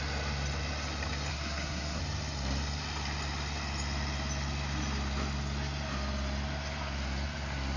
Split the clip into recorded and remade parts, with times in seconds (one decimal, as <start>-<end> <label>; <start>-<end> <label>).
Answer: 0.0-1.3 recorded; 1.3-2.0 remade; 2.0-7.8 recorded